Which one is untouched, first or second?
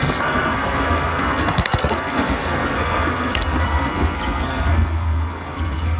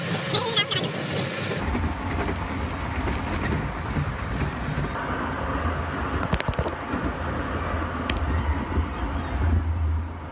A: second